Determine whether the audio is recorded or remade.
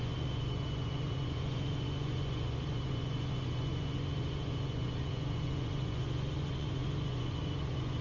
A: remade